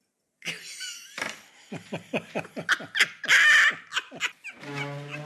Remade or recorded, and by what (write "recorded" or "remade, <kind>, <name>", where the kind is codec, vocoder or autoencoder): recorded